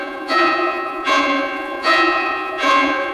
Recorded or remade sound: remade